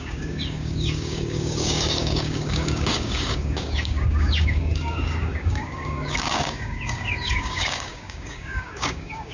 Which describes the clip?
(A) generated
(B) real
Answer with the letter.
A